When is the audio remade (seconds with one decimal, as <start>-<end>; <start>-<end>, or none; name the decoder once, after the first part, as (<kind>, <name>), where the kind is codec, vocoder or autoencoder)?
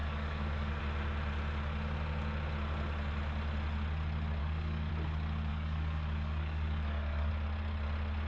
0.0-0.8 (codec, DAC); 4.4-4.9; 5.5-7.3